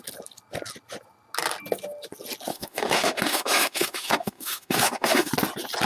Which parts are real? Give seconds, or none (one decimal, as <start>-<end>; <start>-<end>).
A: 0.0-2.5; 5.3-5.9